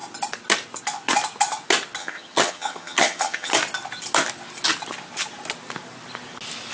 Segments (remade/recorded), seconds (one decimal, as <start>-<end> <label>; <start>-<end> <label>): 0.0-2.0 recorded; 2.0-3.5 remade; 3.5-6.7 recorded

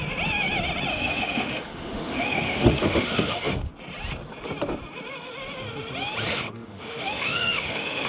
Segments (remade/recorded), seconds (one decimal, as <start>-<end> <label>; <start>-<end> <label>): 0.0-0.9 recorded; 0.9-3.7 remade; 3.7-6.3 recorded; 6.3-8.1 remade